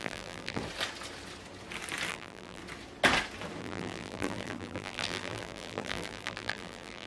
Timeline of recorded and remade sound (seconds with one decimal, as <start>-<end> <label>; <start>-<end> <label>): 0.0-0.6 remade; 0.6-2.1 recorded; 2.1-2.6 remade; 2.6-3.6 recorded; 3.6-7.1 remade